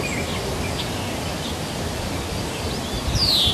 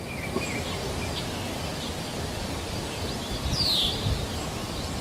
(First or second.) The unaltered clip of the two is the first